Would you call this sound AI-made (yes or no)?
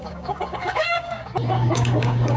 yes